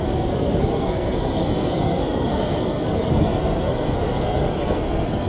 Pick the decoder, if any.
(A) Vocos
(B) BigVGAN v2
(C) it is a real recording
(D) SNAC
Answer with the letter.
D